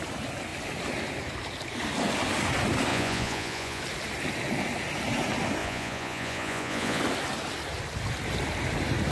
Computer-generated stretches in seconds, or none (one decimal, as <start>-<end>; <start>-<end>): 2.9-3.8; 5.6-7.0